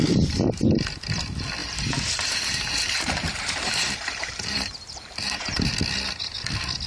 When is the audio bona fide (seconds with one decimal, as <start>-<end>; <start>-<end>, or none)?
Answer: 0.0-1.6; 5.7-6.9